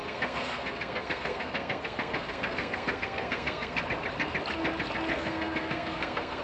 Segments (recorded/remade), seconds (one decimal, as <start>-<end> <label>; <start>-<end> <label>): 0.0-3.8 remade; 3.8-5.1 recorded; 5.1-6.4 remade